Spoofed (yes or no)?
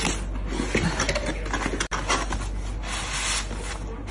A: no